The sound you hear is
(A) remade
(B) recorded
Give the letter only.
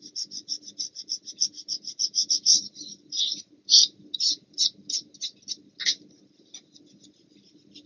B